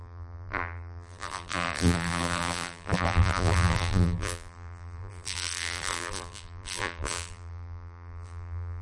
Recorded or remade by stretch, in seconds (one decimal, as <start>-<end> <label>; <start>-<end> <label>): 0.0-8.8 remade